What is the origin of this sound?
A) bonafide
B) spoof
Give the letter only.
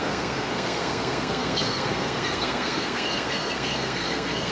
B